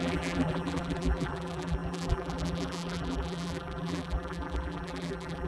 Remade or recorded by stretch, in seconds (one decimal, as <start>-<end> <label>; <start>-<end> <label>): 0.0-5.5 remade

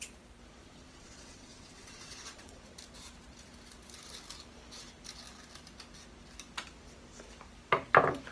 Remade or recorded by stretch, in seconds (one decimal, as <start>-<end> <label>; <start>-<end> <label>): 0.0-0.6 recorded; 0.6-2.6 remade; 2.6-8.3 recorded